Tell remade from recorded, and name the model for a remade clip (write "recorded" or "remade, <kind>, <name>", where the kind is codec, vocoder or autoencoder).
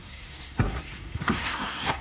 remade, codec, SNAC